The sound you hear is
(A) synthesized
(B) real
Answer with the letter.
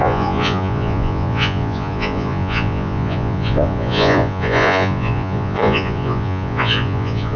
A